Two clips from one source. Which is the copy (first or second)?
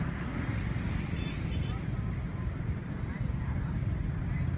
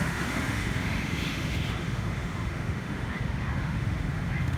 second